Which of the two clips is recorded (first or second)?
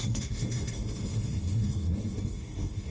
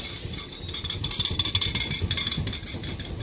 second